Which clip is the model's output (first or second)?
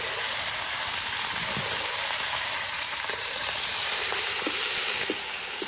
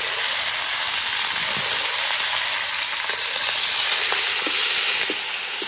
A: first